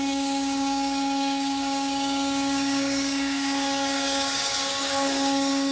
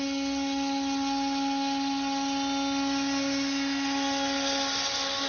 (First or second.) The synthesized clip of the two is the first